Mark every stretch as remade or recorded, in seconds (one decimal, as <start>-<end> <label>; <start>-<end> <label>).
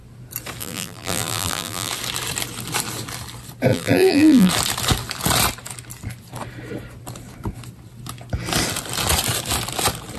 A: 0.0-0.6 recorded; 0.6-1.9 remade; 1.9-3.7 recorded; 3.7-4.5 remade; 4.5-10.2 recorded